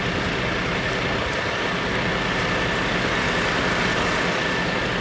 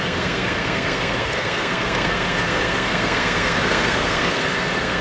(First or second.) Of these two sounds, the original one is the first